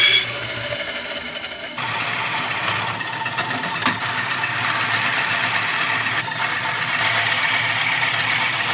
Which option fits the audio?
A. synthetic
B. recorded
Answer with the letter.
B